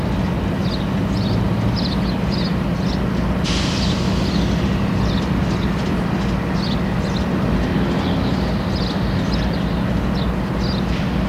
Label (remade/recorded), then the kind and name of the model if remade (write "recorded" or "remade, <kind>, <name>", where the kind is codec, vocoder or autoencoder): recorded